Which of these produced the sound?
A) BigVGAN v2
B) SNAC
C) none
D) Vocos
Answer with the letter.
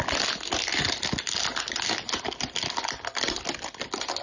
C